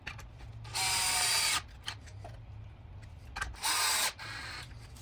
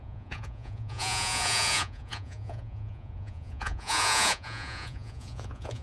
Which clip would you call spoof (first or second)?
second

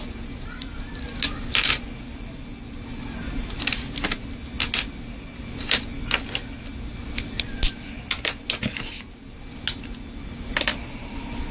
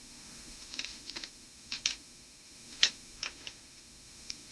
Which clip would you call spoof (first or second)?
second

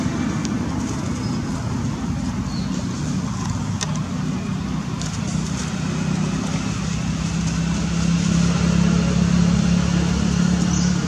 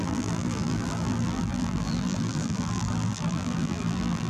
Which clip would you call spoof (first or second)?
second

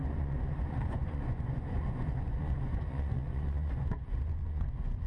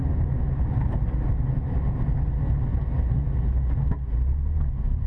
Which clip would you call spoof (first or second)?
first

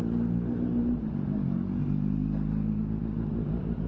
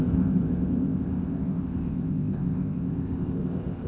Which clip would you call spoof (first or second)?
second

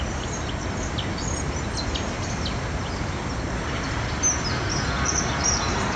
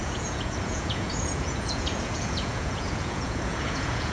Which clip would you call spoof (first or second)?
second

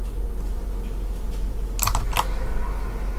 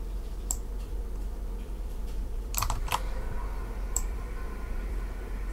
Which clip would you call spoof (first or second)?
second